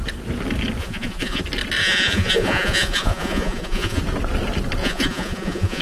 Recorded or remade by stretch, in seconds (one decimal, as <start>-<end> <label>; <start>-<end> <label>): 0.0-0.8 recorded; 0.8-1.4 remade; 1.4-1.8 recorded; 1.8-4.0 remade; 4.0-4.8 recorded; 4.8-5.8 remade